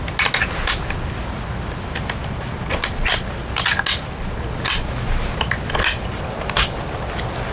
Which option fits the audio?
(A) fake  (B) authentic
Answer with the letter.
B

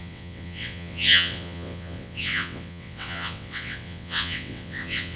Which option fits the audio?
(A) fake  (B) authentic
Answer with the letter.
A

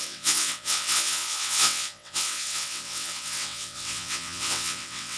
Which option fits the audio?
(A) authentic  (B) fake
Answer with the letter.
B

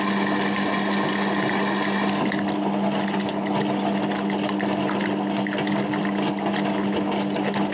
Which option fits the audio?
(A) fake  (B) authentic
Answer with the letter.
B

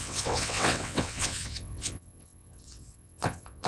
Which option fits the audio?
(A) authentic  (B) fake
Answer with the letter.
B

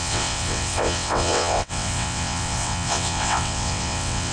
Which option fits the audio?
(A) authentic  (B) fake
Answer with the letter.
B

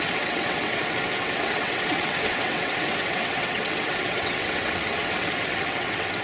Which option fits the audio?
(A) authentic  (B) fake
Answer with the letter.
B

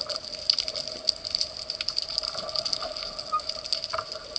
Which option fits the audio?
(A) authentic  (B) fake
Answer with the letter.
A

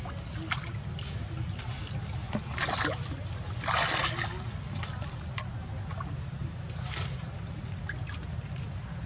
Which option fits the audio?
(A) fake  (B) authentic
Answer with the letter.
B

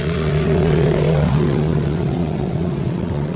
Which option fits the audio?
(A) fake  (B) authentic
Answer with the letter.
A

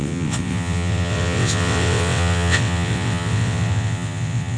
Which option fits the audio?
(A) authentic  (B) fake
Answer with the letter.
B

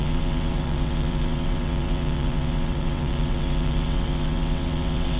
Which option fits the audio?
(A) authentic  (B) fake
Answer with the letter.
B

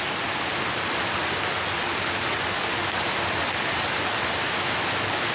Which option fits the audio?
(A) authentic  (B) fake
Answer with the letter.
A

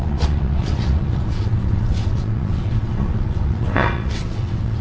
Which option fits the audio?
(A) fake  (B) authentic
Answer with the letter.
A